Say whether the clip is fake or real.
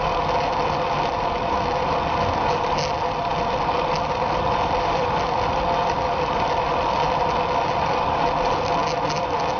real